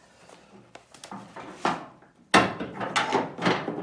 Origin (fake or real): real